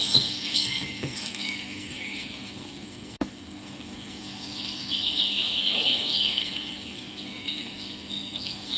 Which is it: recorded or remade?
remade